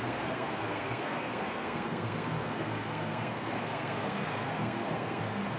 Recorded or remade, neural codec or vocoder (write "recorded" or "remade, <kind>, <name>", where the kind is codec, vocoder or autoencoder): remade, codec, SNAC